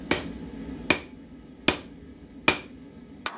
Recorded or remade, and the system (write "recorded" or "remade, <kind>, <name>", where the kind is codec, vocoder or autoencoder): recorded